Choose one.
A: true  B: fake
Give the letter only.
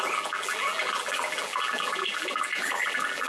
B